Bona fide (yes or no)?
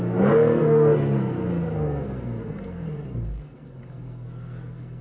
no